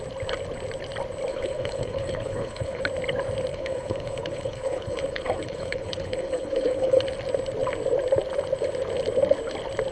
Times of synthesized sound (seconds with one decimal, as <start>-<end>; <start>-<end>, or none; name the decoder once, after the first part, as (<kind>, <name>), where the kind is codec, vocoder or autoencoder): 1.3-2.8 (codec, HILCodec); 3.5-7.0